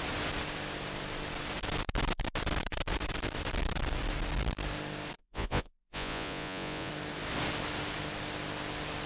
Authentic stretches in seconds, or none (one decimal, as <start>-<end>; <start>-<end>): 0.0-5.2; 6.9-9.1